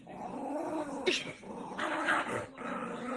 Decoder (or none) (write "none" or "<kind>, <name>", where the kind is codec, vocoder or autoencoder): none